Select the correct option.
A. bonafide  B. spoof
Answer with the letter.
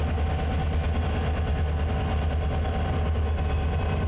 A